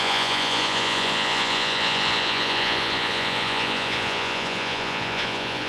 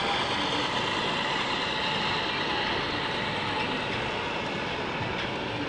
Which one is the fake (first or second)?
first